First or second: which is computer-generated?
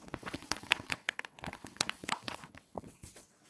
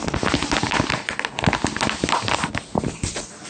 first